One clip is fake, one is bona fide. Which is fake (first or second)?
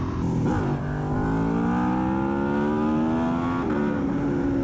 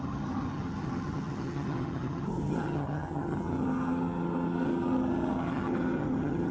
second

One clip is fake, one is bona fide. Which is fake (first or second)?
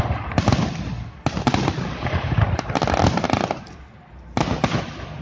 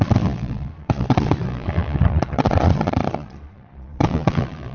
second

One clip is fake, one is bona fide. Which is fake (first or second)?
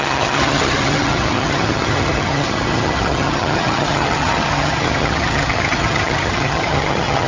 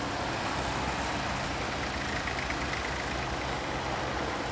first